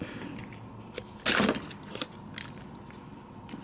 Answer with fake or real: real